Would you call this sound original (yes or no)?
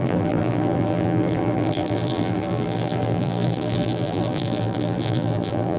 no